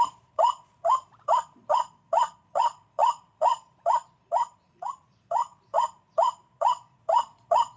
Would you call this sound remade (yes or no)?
yes